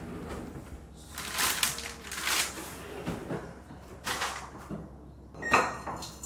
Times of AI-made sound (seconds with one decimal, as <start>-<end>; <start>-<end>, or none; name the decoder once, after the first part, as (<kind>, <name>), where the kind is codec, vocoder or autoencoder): 3.2-4.7 (vocoder, BigVGAN v2)